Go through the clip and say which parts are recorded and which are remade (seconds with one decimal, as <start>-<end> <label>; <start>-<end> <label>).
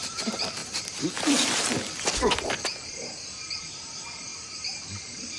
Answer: 0.0-5.4 recorded